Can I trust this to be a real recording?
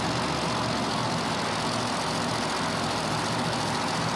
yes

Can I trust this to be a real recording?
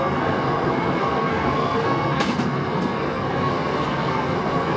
no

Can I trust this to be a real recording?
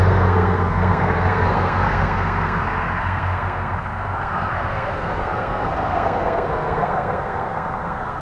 no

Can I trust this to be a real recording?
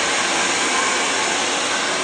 yes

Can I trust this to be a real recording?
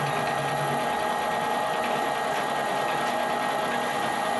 yes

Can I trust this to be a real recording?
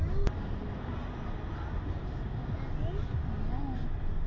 yes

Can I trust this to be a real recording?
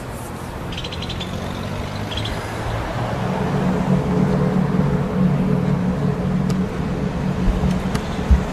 yes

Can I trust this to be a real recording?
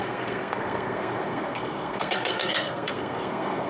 no